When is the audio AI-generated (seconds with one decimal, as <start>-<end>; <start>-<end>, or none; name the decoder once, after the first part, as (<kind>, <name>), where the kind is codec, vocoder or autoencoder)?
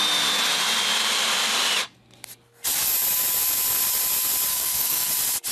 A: 4.5-5.1 (codec, SNAC)